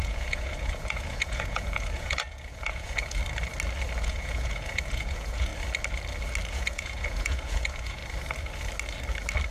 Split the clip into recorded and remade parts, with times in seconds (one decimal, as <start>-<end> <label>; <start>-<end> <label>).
0.0-3.2 remade; 3.2-4.0 recorded; 4.0-5.5 remade; 5.5-6.5 recorded; 6.5-8.0 remade; 8.0-9.5 recorded